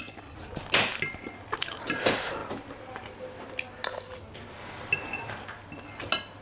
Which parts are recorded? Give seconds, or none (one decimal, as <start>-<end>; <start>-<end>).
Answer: 0.0-6.4